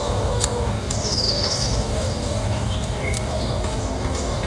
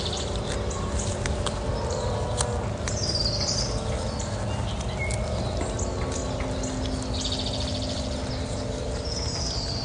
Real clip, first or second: second